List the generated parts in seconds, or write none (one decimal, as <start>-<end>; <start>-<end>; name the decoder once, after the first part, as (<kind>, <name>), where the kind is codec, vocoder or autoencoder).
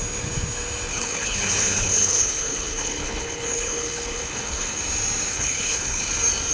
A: 0.9-4.8 (codec, HILCodec); 5.3-6.1